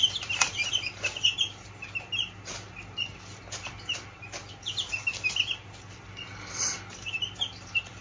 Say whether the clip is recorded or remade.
recorded